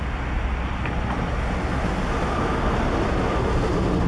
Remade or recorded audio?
recorded